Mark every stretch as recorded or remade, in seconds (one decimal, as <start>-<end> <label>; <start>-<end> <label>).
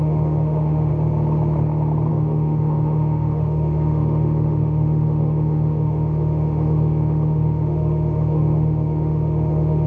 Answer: 0.0-0.9 remade; 0.9-2.1 recorded; 2.1-9.9 remade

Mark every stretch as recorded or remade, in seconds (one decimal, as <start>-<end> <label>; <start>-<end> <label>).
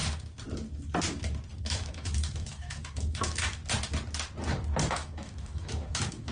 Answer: 0.0-1.6 recorded; 1.6-3.6 remade; 3.6-4.9 recorded; 4.9-6.3 remade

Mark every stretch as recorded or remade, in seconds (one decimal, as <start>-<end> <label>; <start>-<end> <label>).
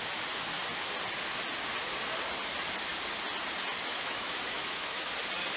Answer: 0.0-3.9 recorded; 3.9-5.1 remade; 5.1-5.6 recorded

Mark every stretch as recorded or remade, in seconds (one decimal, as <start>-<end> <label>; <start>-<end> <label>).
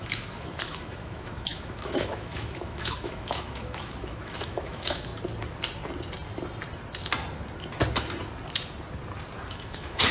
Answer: 0.0-5.1 remade; 5.1-9.5 recorded; 9.5-10.1 remade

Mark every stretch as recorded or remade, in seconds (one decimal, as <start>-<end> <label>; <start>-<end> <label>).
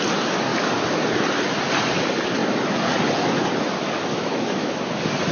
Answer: 0.0-4.1 recorded; 4.1-4.8 remade; 4.8-5.3 recorded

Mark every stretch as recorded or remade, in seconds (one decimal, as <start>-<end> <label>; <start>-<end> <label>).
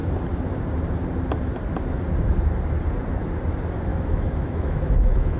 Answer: 0.0-3.9 recorded; 3.9-5.4 remade